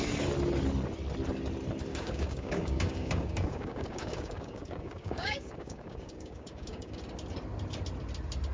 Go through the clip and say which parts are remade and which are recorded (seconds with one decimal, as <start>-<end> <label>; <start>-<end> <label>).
0.0-1.9 recorded; 1.9-7.0 remade; 7.0-8.5 recorded